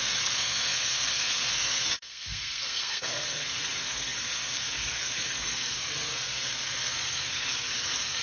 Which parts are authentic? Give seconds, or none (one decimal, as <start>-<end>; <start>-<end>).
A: none